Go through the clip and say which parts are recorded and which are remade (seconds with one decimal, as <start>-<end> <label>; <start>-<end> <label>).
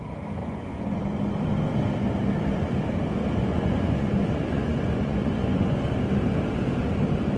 0.0-0.4 recorded; 0.4-1.0 remade; 1.0-3.4 recorded; 3.4-5.8 remade; 5.8-7.4 recorded